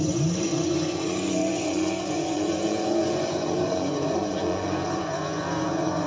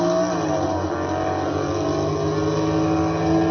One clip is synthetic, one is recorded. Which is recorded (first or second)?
second